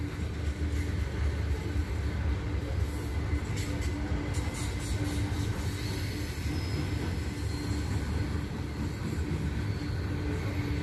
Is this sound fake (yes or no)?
no